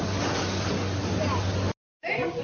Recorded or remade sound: recorded